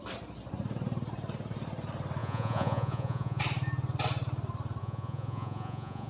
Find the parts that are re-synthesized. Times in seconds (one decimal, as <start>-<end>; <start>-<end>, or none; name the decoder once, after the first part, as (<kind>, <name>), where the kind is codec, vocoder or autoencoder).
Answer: 2.2-3.4 (vocoder, Vocos); 4.8-6.1